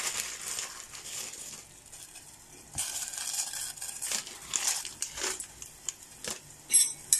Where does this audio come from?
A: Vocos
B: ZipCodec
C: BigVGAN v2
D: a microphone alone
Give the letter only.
D